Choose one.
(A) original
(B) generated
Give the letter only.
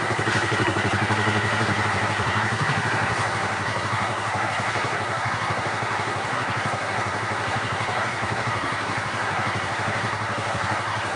B